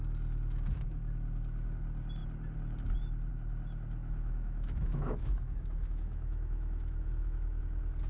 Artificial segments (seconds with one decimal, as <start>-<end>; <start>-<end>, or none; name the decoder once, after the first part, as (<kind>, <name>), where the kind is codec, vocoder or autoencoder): 4.0-7.6 (autoencoder, DAC-VAE)